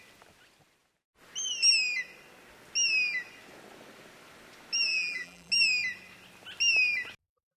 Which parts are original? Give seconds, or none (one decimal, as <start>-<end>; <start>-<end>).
0.0-4.9; 5.5-7.6